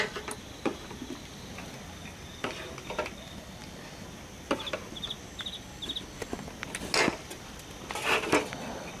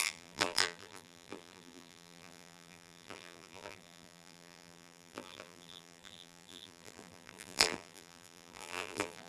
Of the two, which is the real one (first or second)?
first